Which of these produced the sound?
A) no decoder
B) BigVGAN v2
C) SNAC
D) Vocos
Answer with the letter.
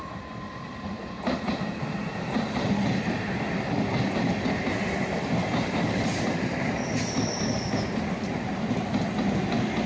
A